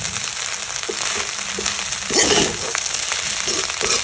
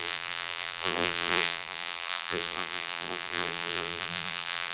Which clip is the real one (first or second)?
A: first